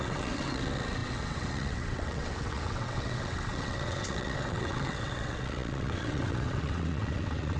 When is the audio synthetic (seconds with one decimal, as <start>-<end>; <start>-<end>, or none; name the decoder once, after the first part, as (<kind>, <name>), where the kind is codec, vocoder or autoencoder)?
0.0-7.6 (vocoder, WaveNeXt)